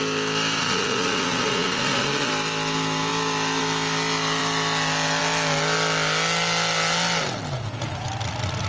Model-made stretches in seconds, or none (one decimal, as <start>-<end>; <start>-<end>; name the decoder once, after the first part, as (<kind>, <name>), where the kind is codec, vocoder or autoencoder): 0.6-2.3 (vocoder, Vocos)